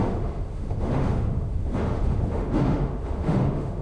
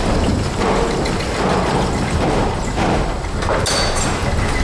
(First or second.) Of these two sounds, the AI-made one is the first